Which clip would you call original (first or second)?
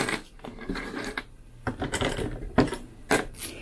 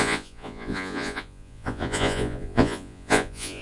first